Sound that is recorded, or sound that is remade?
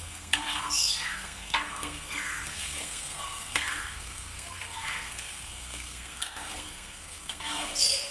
remade